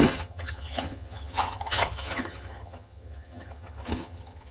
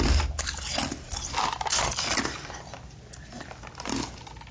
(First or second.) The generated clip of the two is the first